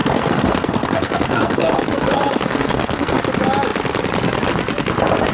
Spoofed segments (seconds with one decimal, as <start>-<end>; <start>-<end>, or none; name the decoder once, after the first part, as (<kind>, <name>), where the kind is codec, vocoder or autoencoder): 0.0-3.2 (codec, SNAC)